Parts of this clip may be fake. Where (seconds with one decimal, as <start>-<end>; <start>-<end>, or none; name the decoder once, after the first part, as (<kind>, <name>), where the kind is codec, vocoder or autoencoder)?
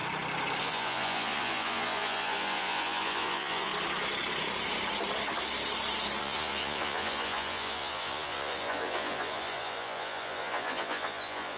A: 0.6-3.7 (vocoder, Vocos); 6.2-11.6